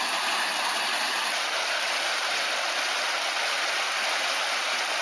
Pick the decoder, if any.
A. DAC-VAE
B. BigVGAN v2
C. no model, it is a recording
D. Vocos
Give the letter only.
C